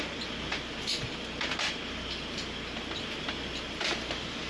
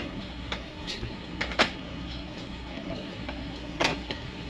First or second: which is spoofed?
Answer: second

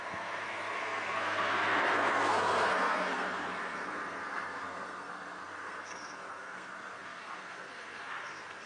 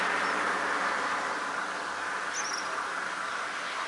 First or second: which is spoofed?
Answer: first